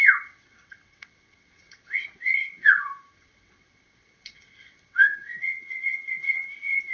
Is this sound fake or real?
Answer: fake